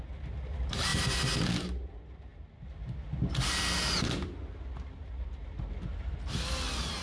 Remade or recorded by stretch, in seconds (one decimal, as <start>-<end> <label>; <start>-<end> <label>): 0.0-7.0 recorded